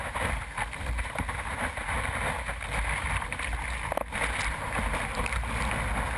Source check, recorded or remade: recorded